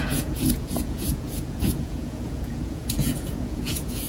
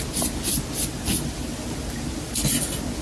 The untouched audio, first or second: second